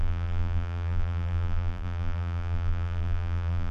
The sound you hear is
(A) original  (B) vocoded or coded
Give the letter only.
B